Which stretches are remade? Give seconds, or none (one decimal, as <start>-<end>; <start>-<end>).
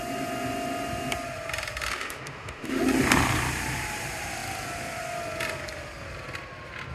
1.9-2.8